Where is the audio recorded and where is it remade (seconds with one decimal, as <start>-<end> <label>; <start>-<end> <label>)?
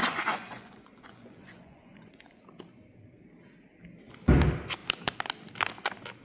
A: 0.0-2.4 remade; 2.4-6.2 recorded